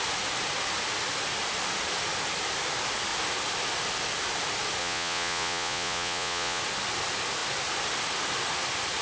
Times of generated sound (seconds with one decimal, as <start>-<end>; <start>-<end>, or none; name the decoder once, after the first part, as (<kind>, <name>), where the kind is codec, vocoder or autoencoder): 4.8-6.6 (vocoder, Vocos)